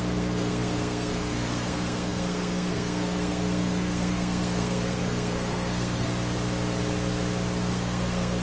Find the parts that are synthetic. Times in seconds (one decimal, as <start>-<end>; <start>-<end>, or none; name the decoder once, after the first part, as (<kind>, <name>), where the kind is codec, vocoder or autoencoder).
0.0-6.1 (codec, SNAC); 7.7-8.4